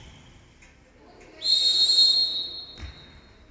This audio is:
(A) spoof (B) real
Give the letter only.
B